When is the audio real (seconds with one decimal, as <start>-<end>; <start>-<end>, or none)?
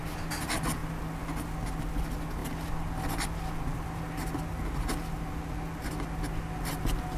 0.0-7.2